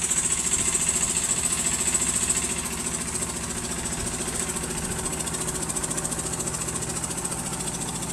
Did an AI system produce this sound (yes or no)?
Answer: no